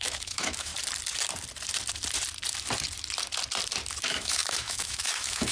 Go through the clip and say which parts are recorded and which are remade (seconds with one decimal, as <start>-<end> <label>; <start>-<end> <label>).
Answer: 0.0-0.7 remade; 0.7-4.0 recorded; 4.0-5.5 remade